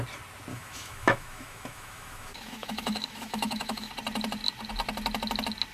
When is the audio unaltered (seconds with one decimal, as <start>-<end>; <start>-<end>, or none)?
0.0-0.5; 3.9-5.7